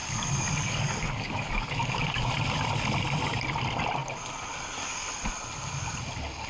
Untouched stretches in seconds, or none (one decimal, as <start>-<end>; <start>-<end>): 2.3-6.5